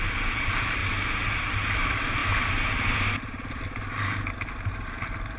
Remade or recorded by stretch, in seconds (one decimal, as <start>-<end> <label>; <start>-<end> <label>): 0.0-0.8 remade; 0.8-1.4 recorded; 1.4-2.2 remade; 2.2-4.7 recorded; 4.7-5.4 remade